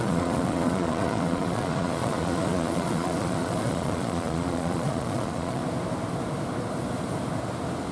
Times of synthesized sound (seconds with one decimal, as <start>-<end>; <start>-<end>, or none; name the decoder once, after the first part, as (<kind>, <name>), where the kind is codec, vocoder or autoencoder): 0.0-5.6 (vocoder, Vocos)

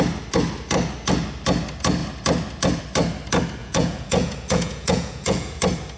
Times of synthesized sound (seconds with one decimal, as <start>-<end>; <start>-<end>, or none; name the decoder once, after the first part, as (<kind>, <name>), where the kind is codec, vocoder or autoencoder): 3.6-5.6 (vocoder, Vocos)